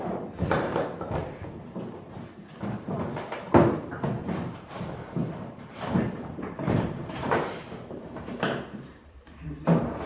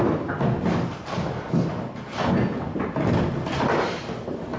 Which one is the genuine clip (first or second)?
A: second